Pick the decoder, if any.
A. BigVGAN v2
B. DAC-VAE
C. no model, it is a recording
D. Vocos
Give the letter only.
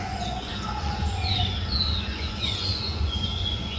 D